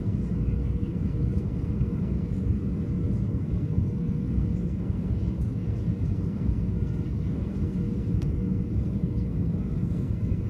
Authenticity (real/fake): fake